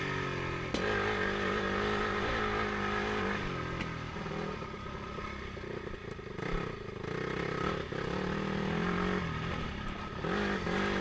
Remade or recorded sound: recorded